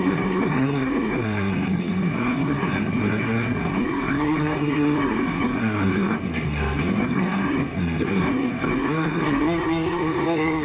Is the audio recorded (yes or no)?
no